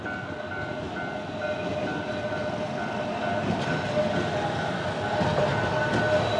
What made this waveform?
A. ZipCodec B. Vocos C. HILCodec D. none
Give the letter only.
D